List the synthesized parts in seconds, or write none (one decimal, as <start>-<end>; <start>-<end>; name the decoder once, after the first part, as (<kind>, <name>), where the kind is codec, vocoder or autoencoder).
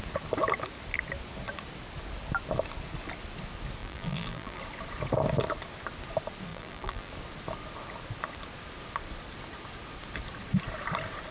3.8-4.6 (vocoder, BigVGAN v2); 6.5-7.1